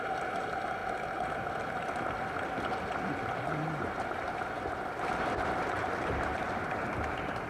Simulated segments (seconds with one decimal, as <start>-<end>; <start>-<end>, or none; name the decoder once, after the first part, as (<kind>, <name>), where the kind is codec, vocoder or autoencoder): 0.0-0.8 (vocoder, BigVGAN v2); 3.3-7.5

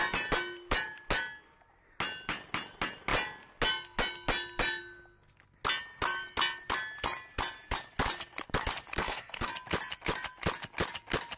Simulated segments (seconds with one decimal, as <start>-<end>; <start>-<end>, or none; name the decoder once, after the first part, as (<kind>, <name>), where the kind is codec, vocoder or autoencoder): 9.0-9.5 (codec, SNAC)

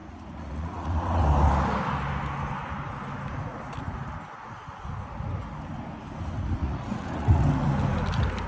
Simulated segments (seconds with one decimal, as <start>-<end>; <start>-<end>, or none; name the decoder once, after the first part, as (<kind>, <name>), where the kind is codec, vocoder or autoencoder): 0.0-1.2 (vocoder, Vocos); 6.6-7.4

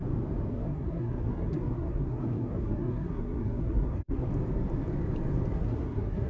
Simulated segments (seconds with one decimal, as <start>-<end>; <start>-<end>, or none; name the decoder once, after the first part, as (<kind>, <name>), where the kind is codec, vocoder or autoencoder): 0.5-4.3 (codec, SNAC); 5.5-6.3

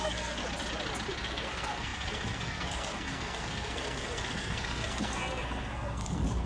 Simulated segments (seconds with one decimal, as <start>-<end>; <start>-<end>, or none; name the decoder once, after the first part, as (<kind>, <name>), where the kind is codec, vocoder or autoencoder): 0.0-0.4 (codec, SNAC); 1.1-6.5

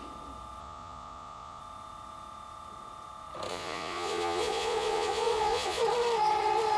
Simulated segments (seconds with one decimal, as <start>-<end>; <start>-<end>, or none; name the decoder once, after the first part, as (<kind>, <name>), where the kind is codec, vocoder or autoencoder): 0.6-1.6 (vocoder, Vocos); 3.5-5.8

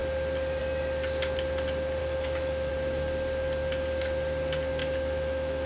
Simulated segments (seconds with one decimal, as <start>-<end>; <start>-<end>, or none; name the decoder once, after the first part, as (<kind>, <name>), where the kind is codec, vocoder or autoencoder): 2.0-2.7 (autoencoder, DAC-VAE); 4.8-5.7

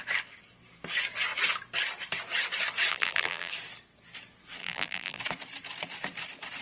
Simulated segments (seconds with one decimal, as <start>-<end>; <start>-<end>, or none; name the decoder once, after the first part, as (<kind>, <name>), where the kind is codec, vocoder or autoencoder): 2.9-3.5 (vocoder, BigVGAN v2); 4.6-5.2